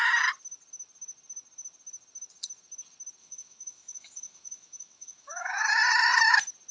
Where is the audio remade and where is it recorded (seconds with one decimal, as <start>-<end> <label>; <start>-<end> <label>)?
0.0-3.2 recorded; 3.2-5.7 remade; 5.7-6.7 recorded